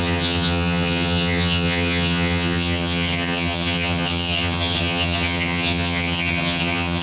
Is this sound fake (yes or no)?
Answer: yes